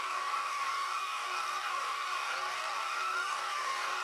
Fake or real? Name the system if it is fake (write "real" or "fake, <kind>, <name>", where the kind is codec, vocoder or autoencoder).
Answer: fake, codec, DAC